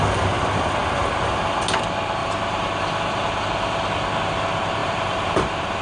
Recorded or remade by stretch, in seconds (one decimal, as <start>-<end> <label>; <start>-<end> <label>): 0.0-2.2 recorded; 2.2-3.4 remade; 3.4-4.8 recorded; 4.8-5.8 remade

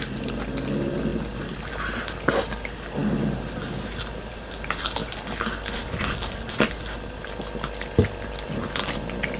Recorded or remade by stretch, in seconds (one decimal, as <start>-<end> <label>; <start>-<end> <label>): 0.0-9.4 recorded

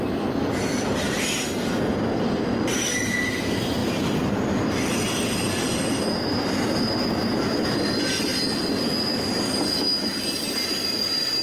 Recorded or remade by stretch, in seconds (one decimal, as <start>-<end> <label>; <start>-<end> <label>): 0.0-3.8 recorded; 3.8-4.3 remade; 4.3-11.4 recorded

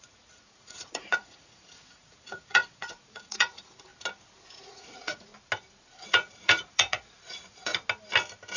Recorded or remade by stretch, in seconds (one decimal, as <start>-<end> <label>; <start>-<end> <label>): 0.0-3.9 remade; 3.9-4.5 recorded; 4.5-5.3 remade; 5.3-6.0 recorded; 6.0-7.7 remade; 7.7-8.6 recorded